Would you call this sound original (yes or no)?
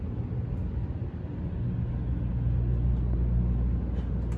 yes